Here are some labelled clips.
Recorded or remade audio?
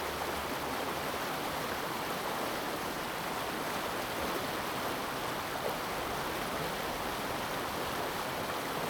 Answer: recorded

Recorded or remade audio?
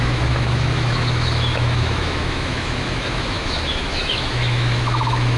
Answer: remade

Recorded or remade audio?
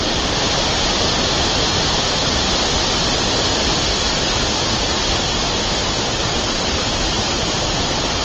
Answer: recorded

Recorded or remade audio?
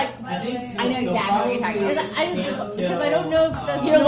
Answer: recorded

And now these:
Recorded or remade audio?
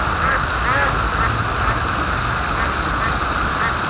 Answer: recorded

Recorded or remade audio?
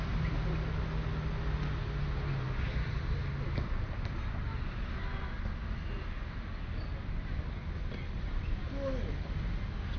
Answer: recorded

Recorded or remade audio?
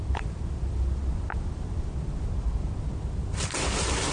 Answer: recorded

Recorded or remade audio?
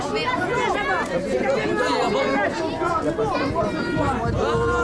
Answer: recorded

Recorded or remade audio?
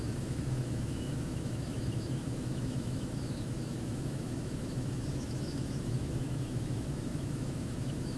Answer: remade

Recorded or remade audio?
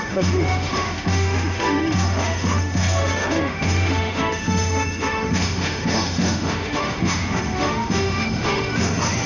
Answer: remade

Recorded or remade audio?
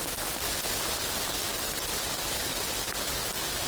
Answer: recorded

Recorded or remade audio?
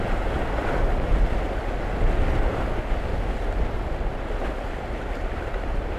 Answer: recorded